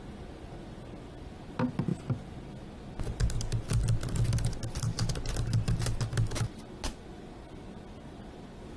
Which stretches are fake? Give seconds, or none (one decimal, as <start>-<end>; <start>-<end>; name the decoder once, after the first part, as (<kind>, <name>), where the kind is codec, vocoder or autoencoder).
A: none